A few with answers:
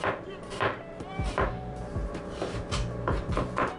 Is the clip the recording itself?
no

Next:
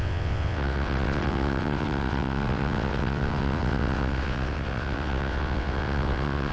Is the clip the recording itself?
no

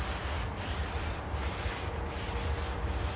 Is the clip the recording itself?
yes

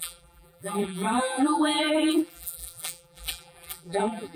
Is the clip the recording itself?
no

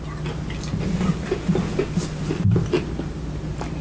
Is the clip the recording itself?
yes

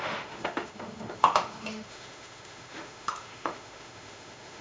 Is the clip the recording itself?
no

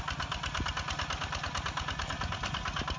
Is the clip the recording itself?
yes